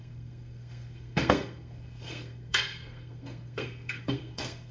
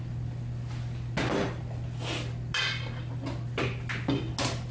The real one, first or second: second